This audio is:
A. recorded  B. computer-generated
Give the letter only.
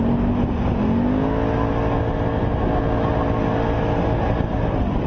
A